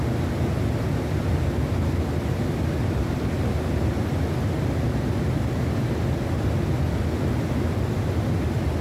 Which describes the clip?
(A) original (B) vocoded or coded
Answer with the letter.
A